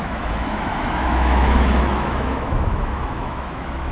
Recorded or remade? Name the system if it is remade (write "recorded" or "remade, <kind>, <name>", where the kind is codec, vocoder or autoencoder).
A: remade, autoencoder, DAC-VAE